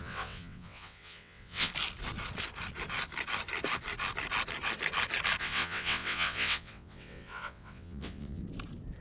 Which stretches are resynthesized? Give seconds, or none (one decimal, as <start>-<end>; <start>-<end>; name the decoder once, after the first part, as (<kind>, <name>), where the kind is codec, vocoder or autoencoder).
0.0-1.7 (vocoder, WaveNeXt); 5.4-8.4